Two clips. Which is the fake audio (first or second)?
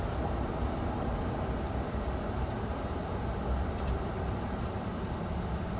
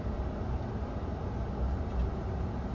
first